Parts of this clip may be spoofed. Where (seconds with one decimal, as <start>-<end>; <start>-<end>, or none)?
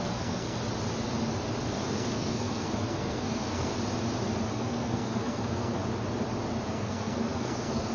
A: 0.0-0.6; 1.7-3.7; 4.5-5.8; 6.7-7.9